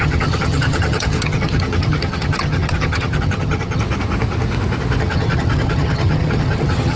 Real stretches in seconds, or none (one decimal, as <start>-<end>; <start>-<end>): 3.8-5.0